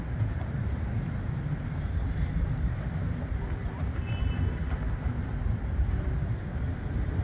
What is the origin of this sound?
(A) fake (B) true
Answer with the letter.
A